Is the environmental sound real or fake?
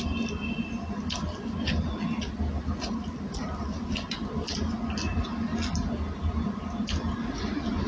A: real